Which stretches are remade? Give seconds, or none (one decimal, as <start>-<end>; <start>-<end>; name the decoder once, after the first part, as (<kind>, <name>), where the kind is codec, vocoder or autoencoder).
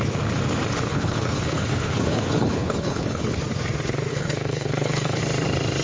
0.9-3.4 (codec, HILCodec); 4.1-5.2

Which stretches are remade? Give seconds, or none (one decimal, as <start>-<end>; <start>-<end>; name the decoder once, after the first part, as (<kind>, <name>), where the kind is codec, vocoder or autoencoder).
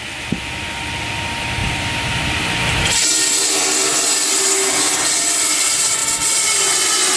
none